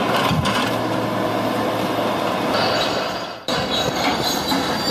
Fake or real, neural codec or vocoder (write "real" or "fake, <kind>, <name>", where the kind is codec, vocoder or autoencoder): real